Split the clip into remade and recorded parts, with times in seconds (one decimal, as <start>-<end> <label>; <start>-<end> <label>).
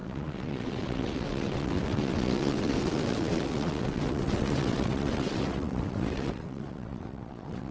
0.0-7.7 remade